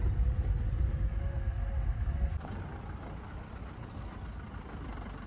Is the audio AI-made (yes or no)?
no